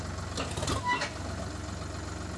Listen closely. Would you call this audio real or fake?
real